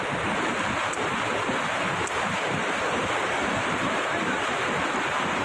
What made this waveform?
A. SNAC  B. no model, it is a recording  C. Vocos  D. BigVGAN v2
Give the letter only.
D